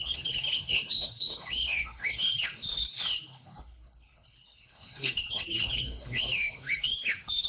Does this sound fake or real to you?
fake